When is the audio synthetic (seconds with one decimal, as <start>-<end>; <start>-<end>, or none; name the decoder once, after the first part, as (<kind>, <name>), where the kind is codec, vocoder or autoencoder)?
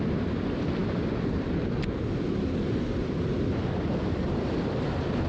none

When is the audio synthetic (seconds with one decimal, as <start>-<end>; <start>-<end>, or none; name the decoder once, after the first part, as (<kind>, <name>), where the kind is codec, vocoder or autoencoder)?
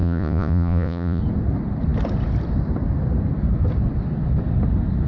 0.0-1.2 (vocoder, Vocos)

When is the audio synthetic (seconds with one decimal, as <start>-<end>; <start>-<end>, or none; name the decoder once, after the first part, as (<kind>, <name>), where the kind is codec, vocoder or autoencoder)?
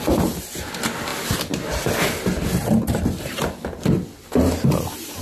none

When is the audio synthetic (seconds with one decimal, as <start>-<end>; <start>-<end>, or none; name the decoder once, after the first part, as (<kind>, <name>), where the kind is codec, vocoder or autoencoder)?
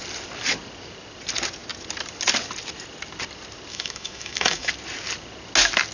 3.7-4.7 (autoencoder, DAC-VAE)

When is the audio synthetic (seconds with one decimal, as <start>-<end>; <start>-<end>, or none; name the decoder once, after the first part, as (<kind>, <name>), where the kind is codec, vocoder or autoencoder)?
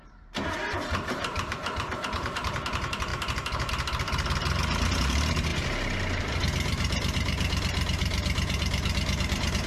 0.0-9.7 (vocoder, BigVGAN v2)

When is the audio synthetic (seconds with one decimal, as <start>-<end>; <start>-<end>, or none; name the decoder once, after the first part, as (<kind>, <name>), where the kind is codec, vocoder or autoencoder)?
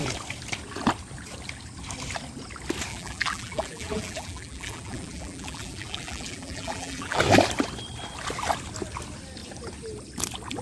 2.9-7.2 (vocoder, BigVGAN v2)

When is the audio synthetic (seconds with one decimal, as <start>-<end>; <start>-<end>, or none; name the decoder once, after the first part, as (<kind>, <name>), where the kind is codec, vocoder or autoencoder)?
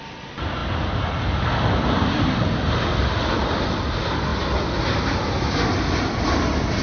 none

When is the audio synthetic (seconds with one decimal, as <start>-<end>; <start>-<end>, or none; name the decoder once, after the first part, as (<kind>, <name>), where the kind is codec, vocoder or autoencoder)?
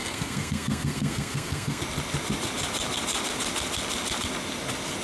0.0-1.8 (codec, SNAC)